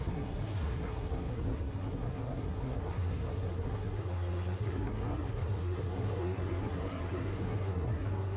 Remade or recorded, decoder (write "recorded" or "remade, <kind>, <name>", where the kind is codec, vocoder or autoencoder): remade, codec, SNAC